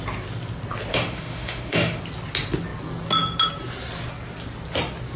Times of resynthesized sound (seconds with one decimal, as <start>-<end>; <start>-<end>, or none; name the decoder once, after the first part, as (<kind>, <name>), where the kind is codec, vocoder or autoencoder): 0.9-2.0 (autoencoder, DAC-VAE)